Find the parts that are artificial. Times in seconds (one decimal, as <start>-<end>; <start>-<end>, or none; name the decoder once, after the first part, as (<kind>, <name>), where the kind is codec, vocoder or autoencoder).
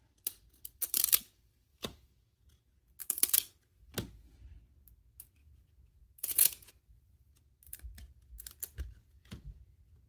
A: 1.7-2.7 (vocoder, Vocos); 5.4-6.7; 9.0-10.1